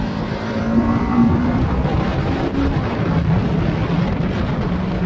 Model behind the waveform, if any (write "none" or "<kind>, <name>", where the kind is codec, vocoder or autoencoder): vocoder, BigVGAN v2